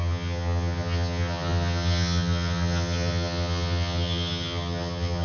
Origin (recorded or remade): remade